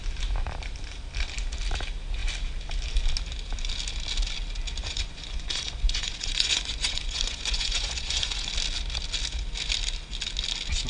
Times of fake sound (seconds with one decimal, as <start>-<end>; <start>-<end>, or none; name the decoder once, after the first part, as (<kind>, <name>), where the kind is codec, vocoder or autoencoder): 4.8-8.5 (vocoder, Vocos)

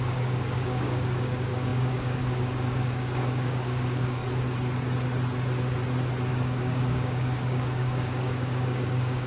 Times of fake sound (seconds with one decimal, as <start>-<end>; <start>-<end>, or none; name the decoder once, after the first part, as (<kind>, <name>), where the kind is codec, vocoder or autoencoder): 0.0-4.2 (codec, DAC); 6.3-9.3

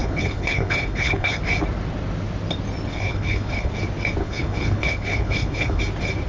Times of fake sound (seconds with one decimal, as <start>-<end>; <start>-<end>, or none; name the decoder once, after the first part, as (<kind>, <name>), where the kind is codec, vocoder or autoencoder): 0.0-1.4 (codec, HILCodec); 2.9-3.7; 4.2-5.8

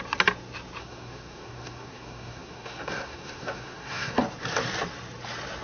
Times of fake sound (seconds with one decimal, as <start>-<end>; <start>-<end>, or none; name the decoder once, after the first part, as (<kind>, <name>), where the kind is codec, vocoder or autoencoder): 0.8-4.2 (codec, SNAC)

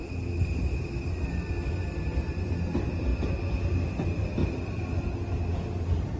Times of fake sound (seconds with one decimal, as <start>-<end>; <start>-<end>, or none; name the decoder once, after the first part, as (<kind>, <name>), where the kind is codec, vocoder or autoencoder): 1.7-3.1 (vocoder, BigVGAN v2); 3.7-4.4; 5.5-6.2

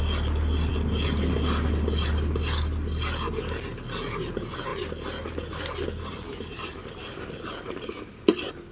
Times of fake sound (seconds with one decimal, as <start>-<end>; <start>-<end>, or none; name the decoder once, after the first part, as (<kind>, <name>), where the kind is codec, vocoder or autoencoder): none

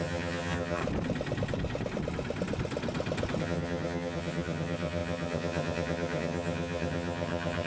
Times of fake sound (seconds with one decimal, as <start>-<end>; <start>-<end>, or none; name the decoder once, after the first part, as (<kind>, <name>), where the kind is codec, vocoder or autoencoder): 0.0-0.8 (vocoder, HiFi-GAN); 3.4-7.7